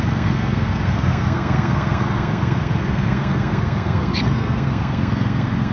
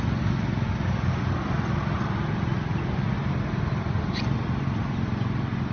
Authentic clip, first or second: second